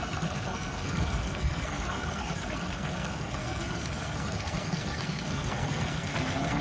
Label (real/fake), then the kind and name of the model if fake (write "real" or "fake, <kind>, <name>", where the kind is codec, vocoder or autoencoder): fake, codec, SNAC